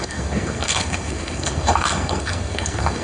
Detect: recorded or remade remade